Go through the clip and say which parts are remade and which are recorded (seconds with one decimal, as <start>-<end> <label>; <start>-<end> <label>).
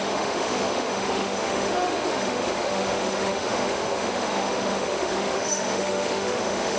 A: 0.0-6.8 remade